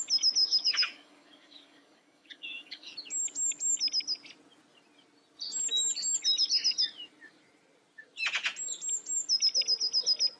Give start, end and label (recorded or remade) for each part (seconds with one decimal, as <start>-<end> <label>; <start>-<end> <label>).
0.0-0.4 recorded; 0.4-2.9 remade; 2.9-10.4 recorded